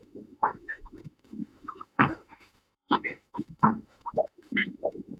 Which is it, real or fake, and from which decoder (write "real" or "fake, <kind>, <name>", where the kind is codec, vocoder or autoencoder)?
fake, autoencoder, DAC-VAE